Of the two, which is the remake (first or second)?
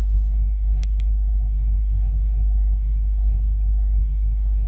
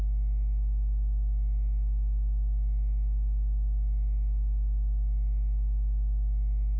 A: first